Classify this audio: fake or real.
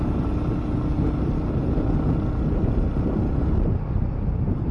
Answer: real